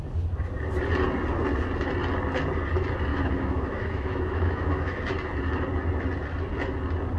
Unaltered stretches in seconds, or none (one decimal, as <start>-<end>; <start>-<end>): 0.0-3.1; 5.0-7.2